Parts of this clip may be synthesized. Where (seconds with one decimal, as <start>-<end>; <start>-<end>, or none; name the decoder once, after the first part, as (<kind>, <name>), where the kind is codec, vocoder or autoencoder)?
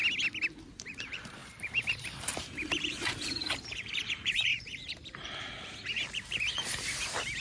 0.7-7.4 (vocoder, BigVGAN v2)